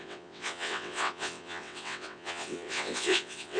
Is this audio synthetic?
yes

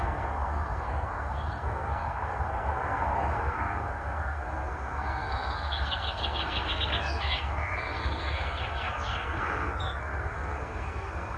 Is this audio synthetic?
yes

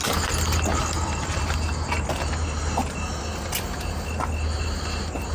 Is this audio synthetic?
no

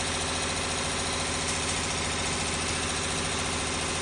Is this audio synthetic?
no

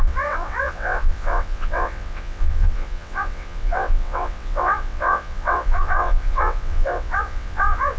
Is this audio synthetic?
yes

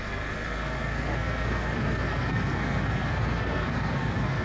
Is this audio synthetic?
yes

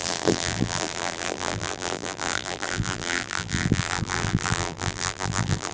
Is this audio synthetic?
yes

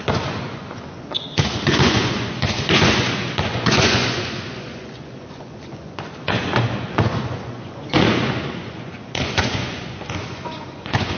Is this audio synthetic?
yes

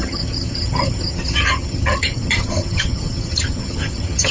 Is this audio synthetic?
yes